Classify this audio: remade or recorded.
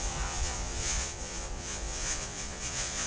remade